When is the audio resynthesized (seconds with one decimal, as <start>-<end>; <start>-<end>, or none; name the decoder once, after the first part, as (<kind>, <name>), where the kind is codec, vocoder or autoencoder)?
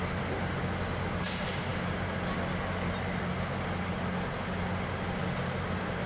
none